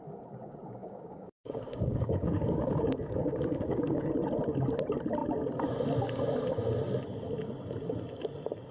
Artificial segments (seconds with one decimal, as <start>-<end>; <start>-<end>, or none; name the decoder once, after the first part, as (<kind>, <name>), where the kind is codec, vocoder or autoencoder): 0.8-4.1 (codec, DAC)